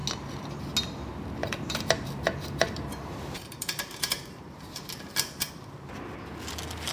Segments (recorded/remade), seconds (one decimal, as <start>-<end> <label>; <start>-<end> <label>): 0.0-1.4 recorded; 1.4-5.5 remade; 5.5-6.9 recorded